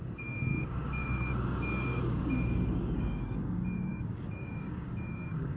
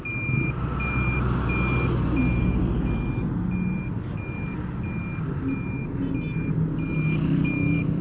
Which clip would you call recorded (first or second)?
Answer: second